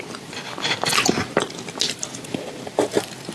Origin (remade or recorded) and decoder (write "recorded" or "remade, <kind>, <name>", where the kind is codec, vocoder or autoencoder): recorded